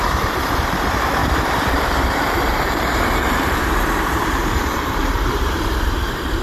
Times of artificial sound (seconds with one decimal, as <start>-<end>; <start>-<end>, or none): 0.0-6.4